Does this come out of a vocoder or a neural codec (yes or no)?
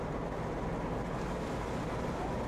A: no